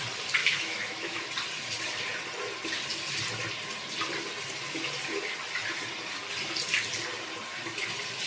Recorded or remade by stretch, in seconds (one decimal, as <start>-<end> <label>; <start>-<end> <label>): 0.0-0.4 recorded; 0.4-1.3 remade; 1.3-8.3 recorded